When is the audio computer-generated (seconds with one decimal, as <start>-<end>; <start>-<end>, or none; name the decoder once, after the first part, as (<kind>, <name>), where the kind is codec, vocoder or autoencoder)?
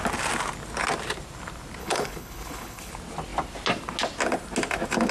1.8-2.9 (codec, HILCodec)